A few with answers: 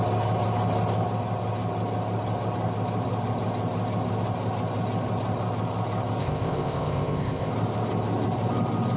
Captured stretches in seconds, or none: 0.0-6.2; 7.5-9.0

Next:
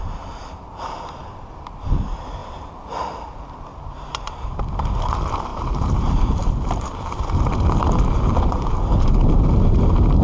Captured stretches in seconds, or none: 0.0-3.7; 4.2-5.5; 6.2-10.2

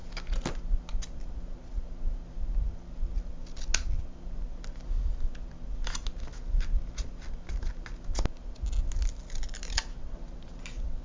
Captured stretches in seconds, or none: 0.0-11.0

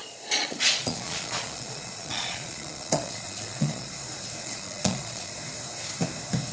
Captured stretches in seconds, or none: 3.9-4.4; 5.3-6.5

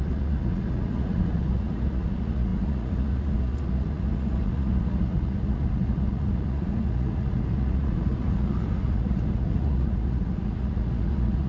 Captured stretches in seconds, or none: none

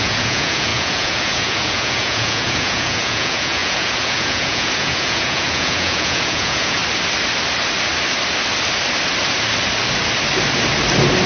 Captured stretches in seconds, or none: 6.8-11.3

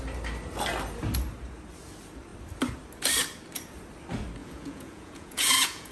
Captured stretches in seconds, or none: 0.0-4.4